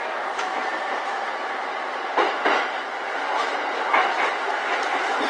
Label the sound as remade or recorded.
remade